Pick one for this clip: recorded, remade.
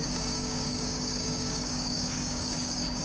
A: remade